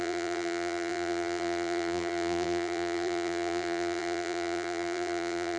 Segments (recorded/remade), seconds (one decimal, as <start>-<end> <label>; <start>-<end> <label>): 0.0-5.6 remade